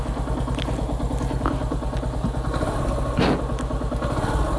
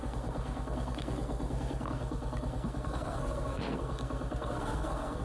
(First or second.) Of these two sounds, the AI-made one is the second